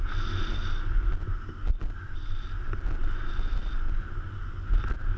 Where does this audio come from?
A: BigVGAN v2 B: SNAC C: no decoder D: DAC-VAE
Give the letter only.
C